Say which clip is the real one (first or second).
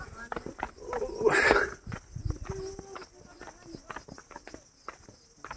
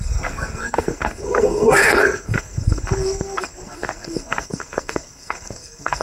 first